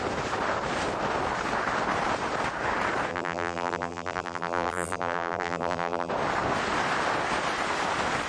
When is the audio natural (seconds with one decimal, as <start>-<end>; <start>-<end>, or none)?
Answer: 0.0-3.1; 6.1-8.3